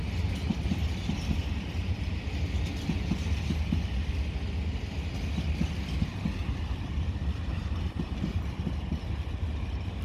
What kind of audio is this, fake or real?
real